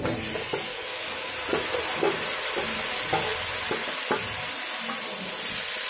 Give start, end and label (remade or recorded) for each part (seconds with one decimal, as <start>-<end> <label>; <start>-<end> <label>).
0.0-0.7 recorded; 0.7-1.3 remade; 1.3-5.9 recorded